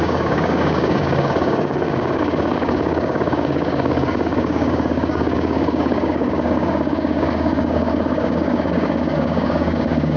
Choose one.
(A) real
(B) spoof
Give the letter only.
B